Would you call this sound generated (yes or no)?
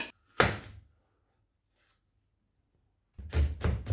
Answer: no